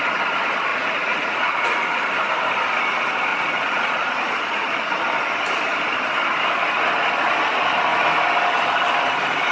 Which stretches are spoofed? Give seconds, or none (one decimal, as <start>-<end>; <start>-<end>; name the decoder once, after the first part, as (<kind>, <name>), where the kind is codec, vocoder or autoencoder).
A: 0.7-2.0 (vocoder, Vocos); 3.3-5.0